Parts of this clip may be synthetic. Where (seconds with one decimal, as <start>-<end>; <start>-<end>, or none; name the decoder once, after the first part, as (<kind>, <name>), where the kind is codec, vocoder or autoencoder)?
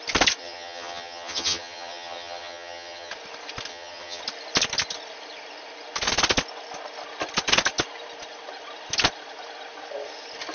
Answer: 0.4-3.1 (vocoder, HiFi-GAN); 3.7-4.2